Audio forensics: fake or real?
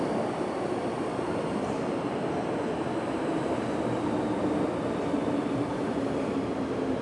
real